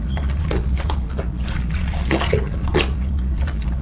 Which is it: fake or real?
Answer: fake